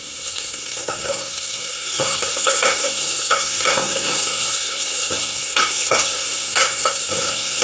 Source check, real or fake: fake